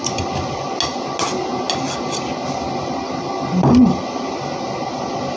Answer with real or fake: real